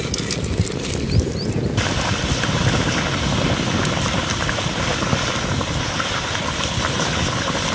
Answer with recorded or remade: recorded